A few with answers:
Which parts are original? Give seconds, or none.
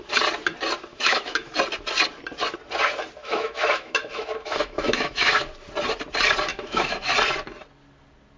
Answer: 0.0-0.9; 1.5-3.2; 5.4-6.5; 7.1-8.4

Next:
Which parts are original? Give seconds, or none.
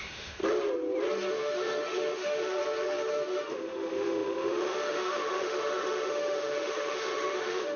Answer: 0.4-1.3; 2.6-3.1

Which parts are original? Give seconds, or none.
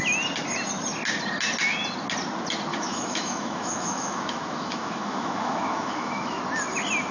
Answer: 0.0-2.7; 6.4-7.1